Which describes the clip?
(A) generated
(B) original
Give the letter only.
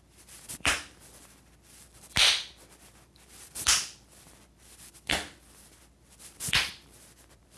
A